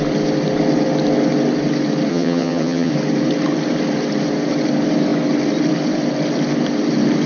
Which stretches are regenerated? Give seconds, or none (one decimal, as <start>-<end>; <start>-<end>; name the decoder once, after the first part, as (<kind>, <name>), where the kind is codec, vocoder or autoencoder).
2.1-2.9 (vocoder, HiFi-GAN)